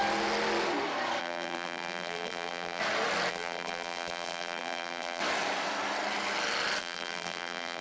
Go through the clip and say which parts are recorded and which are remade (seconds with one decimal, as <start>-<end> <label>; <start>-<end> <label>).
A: 0.0-1.2 recorded; 1.2-2.8 remade; 2.8-3.3 recorded; 3.3-5.2 remade; 5.2-6.8 recorded; 6.8-7.8 remade